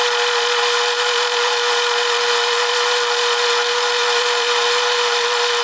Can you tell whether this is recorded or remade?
remade